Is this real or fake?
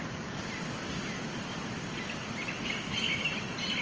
real